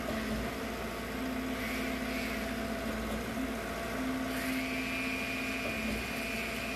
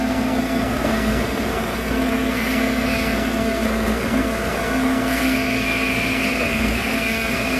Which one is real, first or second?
first